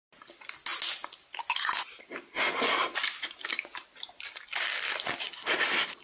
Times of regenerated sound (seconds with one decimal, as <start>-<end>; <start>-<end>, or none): none